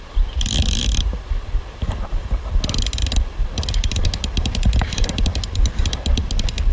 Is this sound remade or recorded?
recorded